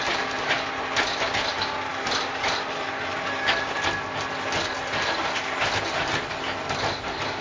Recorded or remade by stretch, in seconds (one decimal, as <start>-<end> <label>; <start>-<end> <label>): 0.0-7.4 recorded